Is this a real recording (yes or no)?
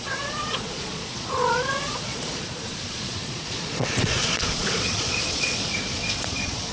no